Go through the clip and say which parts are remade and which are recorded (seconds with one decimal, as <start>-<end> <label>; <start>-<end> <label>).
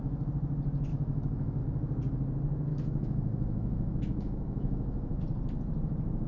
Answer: 0.0-0.9 recorded; 0.9-1.6 remade; 1.6-2.7 recorded; 2.7-5.2 remade; 5.2-6.3 recorded